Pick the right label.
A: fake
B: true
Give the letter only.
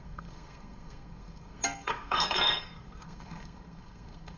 A